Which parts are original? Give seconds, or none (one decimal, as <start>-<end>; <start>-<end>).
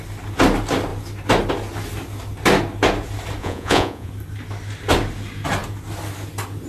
0.0-3.4; 4.1-6.7